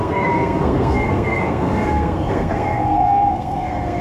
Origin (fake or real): fake